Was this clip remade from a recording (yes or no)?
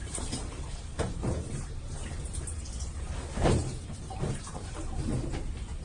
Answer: yes